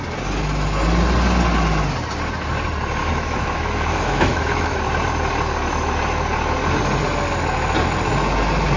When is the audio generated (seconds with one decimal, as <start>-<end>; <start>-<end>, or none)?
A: 3.0-4.8

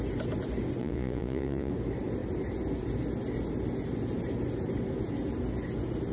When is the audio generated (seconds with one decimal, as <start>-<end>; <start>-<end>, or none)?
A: 0.8-1.7

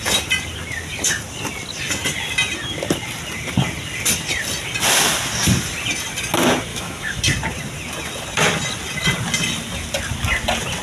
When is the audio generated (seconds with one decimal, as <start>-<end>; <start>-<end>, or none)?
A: 6.7-7.2

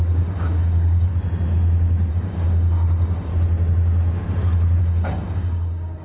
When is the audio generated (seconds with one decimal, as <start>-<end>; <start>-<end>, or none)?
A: 0.0-1.1; 2.1-3.3; 4.8-6.0

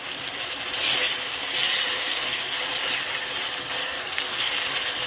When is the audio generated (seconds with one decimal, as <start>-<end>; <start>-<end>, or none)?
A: 2.1-2.6; 3.8-4.5

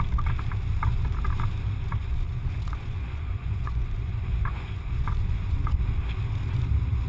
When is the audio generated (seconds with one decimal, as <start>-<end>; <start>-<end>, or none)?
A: 2.0-5.9